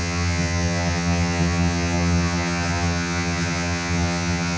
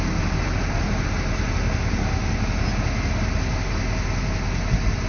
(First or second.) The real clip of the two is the second